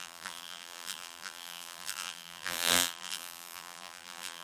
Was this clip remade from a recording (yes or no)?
yes